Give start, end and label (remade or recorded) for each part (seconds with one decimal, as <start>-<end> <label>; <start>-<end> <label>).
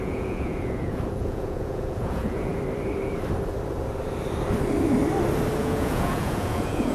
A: 0.0-2.5 remade; 2.5-5.6 recorded; 5.6-6.9 remade